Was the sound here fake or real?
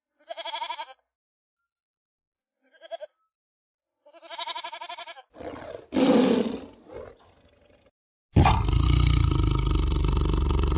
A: real